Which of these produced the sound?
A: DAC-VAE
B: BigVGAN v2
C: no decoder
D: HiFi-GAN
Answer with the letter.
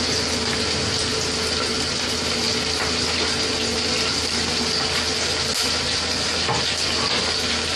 C